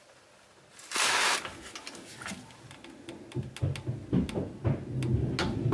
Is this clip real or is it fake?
real